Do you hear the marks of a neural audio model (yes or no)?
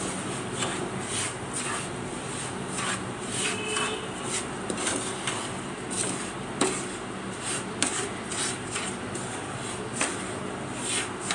yes